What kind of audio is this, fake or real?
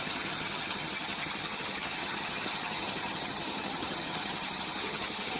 fake